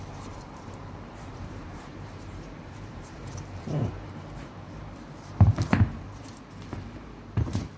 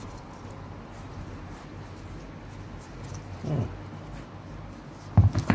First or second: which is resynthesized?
first